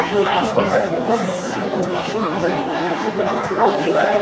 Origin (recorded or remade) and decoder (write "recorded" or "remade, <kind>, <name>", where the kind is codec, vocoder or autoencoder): remade, codec, SNAC